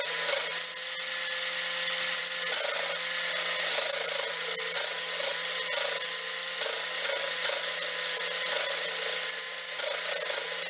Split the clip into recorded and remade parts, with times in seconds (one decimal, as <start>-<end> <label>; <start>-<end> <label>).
0.0-10.7 recorded